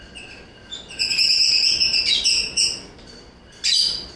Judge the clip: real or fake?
real